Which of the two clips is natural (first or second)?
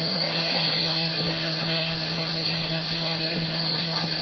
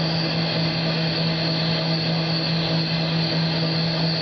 second